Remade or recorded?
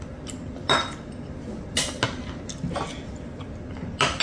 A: recorded